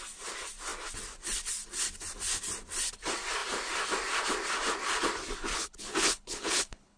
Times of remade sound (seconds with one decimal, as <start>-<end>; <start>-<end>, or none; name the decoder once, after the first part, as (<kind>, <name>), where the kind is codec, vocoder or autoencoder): 5.5-7.0 (codec, HILCodec)